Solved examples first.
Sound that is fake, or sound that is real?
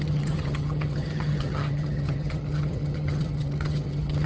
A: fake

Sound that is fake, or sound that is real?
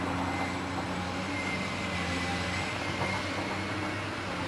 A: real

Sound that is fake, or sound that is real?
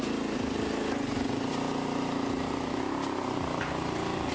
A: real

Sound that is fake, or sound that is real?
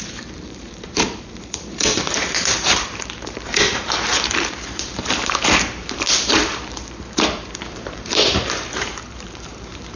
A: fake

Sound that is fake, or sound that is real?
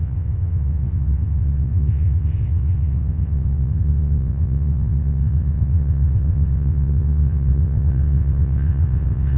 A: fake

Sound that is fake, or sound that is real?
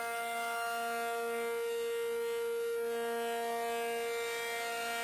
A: real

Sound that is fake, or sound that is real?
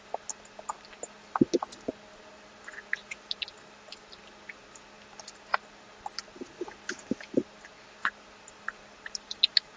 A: real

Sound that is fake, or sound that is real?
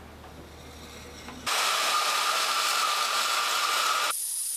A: real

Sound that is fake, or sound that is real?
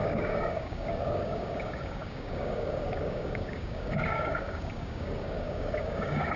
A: fake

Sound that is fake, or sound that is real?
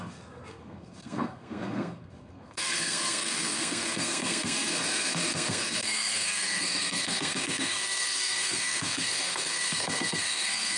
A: fake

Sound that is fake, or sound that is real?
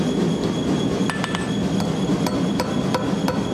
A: real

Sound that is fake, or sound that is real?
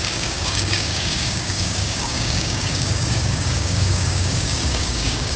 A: fake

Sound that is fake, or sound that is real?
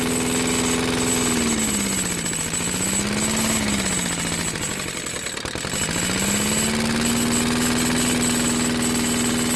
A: real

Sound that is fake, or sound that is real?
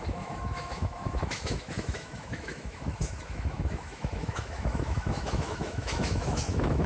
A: fake